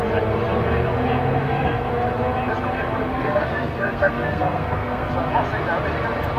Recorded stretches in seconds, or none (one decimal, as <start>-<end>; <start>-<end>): 0.0-1.3; 1.9-3.1; 5.1-6.4